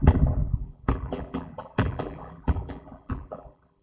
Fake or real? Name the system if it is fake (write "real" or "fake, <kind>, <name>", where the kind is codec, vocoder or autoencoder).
fake, vocoder, BigVGAN v2